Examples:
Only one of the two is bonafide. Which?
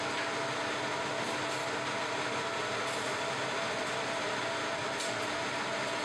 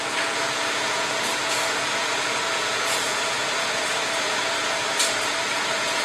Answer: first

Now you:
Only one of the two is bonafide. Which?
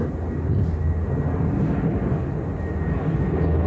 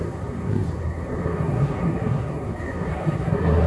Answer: first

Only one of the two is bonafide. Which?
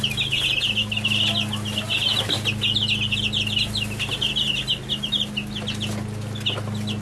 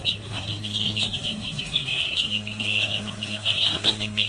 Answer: first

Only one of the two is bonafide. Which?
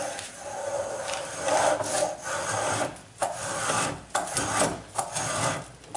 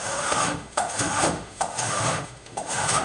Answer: first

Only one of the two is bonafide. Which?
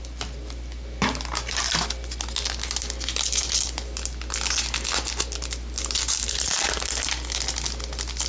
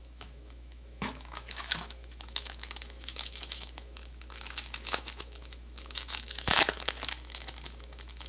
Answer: first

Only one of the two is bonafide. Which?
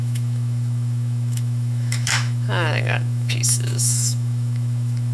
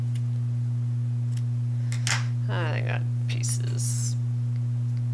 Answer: second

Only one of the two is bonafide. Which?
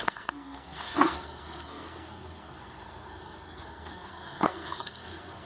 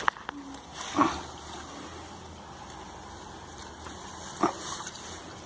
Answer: second